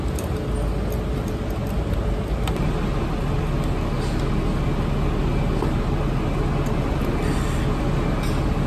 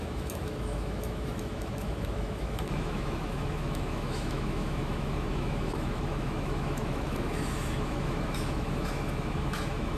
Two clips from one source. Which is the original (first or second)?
first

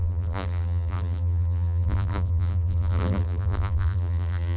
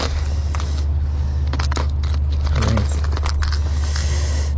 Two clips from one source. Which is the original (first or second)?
second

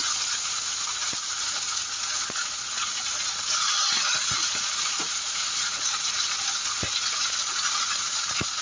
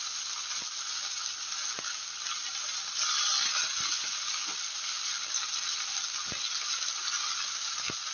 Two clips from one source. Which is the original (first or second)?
second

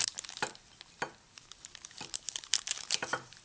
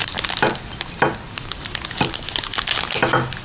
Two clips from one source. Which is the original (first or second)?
second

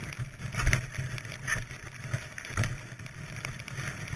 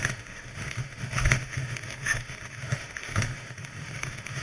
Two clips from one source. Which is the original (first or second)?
first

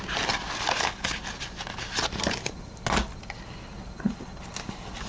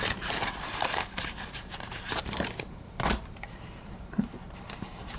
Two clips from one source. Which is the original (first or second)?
first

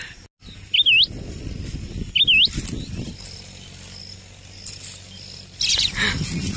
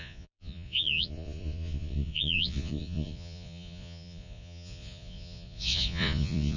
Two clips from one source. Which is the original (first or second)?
first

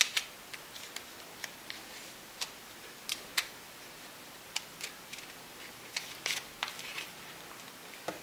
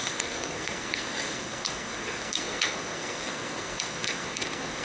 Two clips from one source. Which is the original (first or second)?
first